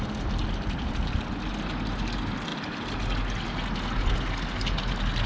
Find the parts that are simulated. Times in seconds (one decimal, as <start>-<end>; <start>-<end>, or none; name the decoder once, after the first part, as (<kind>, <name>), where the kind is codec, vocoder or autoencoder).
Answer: none